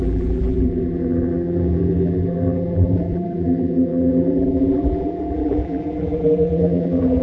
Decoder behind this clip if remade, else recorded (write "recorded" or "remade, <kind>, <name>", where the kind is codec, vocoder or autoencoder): remade, vocoder, BigVGAN v2